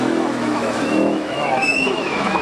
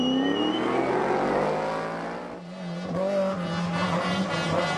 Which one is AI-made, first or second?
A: first